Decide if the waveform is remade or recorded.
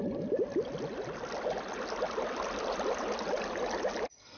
recorded